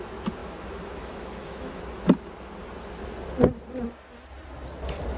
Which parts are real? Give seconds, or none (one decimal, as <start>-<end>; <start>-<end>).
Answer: 0.0-0.4; 1.8-5.2